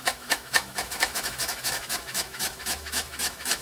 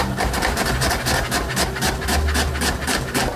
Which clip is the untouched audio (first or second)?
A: second